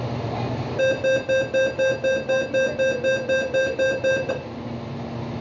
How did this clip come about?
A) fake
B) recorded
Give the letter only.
B